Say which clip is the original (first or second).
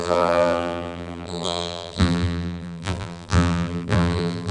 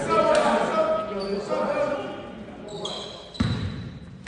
second